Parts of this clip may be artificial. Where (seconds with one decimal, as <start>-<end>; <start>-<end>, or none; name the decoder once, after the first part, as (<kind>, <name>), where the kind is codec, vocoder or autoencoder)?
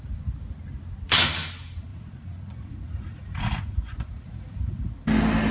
1.9-4.9 (vocoder, Vocos)